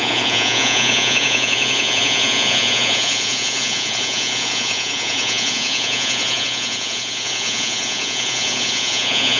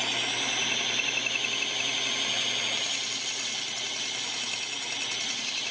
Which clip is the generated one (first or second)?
first